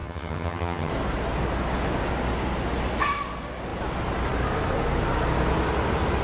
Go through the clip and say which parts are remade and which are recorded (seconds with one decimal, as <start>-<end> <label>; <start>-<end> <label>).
0.0-0.9 remade; 0.9-6.2 recorded